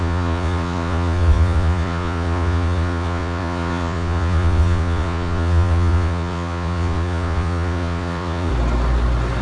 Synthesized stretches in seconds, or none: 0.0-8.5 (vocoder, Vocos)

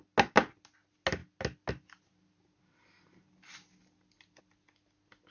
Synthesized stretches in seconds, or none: none

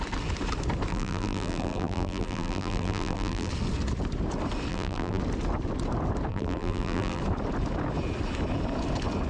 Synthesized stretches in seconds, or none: 0.9-3.5 (vocoder, BigVGAN v2); 4.7-5.2; 6.3-7.2

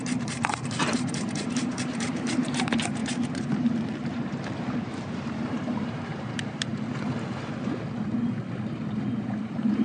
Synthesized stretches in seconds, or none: 0.0-6.7 (vocoder, BigVGAN v2); 9.2-9.8

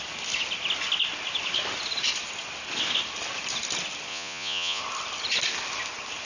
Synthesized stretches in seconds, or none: 4.1-4.8 (vocoder, Vocos)

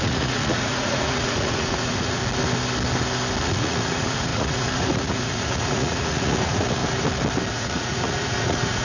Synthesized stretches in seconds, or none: 0.0-2.2 (vocoder, Vocos); 3.4-6.8; 7.5-8.8

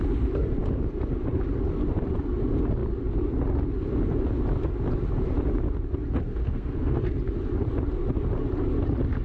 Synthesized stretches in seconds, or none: 6.3-7.0 (codec, SNAC)

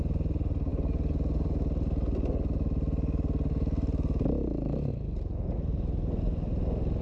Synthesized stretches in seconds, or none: none